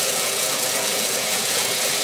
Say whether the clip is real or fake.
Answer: fake